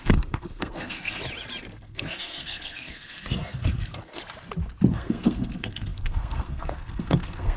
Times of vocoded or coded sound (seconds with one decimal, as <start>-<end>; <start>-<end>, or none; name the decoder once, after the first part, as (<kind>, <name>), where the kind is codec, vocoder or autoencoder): 0.0-1.2 (codec, SNAC); 1.7-4.2; 4.9-7.6